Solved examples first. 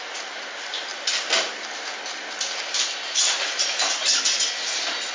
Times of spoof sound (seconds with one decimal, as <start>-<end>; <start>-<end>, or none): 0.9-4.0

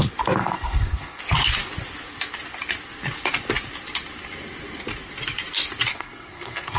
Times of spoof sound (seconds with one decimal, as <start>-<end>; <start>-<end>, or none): 0.4-1.2; 5.9-6.8

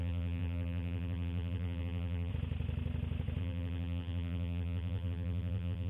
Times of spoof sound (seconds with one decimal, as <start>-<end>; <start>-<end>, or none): 0.0-2.3; 3.4-5.9